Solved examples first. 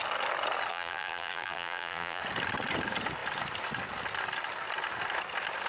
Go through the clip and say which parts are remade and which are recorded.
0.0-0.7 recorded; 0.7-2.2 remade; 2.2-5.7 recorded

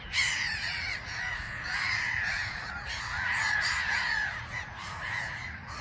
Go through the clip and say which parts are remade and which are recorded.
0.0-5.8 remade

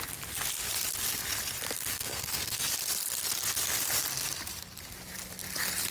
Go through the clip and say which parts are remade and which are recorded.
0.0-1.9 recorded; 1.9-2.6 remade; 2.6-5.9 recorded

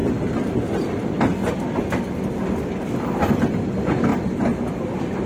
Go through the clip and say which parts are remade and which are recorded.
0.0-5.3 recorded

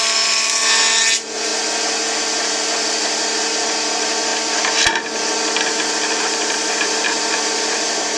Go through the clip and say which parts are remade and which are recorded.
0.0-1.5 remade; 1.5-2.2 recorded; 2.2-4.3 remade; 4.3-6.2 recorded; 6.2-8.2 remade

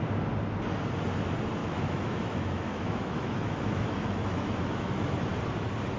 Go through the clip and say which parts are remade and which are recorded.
0.0-1.6 recorded; 1.6-5.2 remade; 5.2-6.0 recorded